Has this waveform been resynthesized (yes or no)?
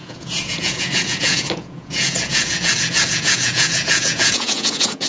yes